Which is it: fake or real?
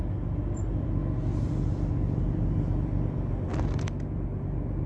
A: real